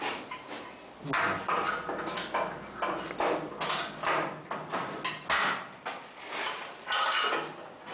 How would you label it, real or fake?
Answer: real